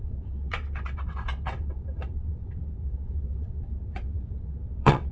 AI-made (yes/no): yes